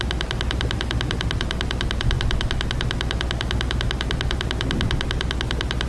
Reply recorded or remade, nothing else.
recorded